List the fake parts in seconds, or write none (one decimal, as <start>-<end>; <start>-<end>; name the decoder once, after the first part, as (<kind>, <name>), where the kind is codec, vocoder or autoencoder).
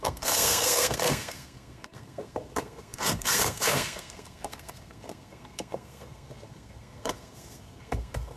0.0-8.4 (codec, SNAC)